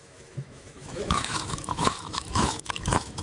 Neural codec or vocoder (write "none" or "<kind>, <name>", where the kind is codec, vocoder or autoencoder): autoencoder, DAC-VAE